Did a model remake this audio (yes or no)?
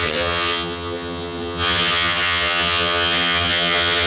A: yes